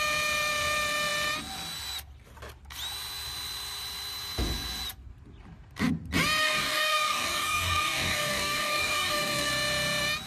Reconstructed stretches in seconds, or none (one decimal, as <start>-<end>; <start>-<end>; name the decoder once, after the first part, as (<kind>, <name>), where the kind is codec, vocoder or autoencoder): 6.4-9.5 (codec, DAC)